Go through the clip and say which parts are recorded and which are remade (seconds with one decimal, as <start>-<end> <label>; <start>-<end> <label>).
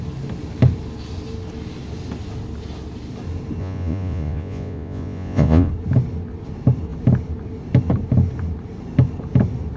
0.0-3.6 recorded; 3.6-5.7 remade; 5.7-9.8 recorded